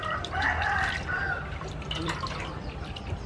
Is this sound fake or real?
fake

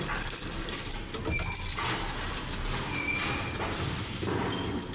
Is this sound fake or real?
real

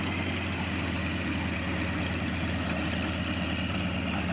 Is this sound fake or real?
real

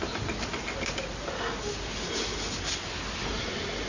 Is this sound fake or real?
real